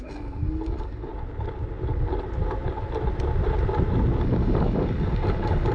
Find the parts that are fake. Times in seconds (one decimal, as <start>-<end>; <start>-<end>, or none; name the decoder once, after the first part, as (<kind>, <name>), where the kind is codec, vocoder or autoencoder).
0.0-1.1 (codec, DAC); 4.2-5.7

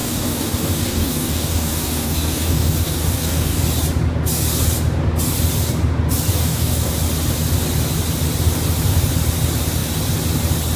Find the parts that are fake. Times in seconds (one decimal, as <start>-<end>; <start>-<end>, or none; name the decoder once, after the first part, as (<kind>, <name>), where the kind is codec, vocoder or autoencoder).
0.0-3.6 (codec, DAC); 6.3-6.9